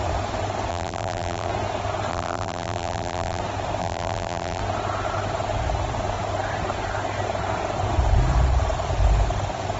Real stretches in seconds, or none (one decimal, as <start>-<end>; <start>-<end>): 0.0-0.7; 1.5-2.1; 3.4-3.8; 4.6-9.8